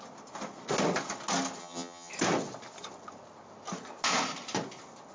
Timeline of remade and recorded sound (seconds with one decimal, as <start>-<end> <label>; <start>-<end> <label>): 0.0-1.6 recorded; 1.6-2.1 remade; 2.1-5.1 recorded